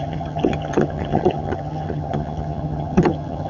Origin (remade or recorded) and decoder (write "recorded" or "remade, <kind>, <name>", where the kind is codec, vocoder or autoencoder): remade, vocoder, HiFi-GAN